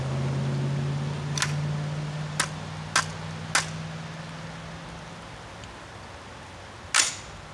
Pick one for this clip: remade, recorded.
recorded